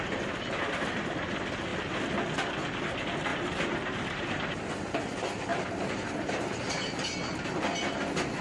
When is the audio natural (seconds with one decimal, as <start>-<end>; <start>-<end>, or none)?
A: 0.0-3.3; 4.4-5.5; 7.0-8.4